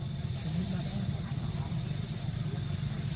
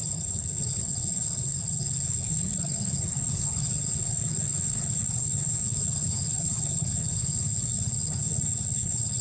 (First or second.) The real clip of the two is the first